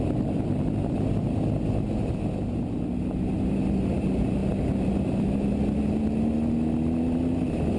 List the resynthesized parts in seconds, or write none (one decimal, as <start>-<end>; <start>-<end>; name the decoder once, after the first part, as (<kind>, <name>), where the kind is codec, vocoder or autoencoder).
none